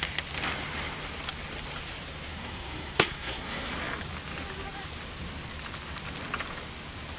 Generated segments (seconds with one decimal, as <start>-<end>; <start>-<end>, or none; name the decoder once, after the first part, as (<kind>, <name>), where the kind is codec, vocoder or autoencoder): 2.3-3.7 (codec, SNAC)